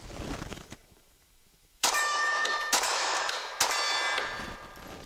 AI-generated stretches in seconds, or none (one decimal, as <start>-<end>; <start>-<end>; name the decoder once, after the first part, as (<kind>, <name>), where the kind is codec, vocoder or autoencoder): 0.5-3.6 (autoencoder, DAC-VAE)